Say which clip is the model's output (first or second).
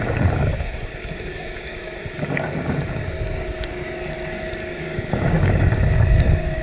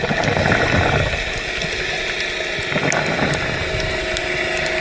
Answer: first